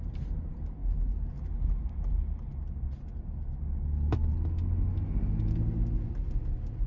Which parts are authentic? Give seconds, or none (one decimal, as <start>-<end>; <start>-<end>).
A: 0.0-6.9